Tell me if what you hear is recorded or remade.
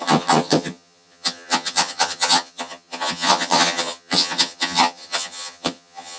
remade